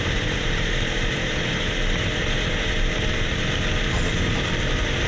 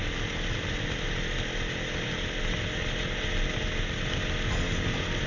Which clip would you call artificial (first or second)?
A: first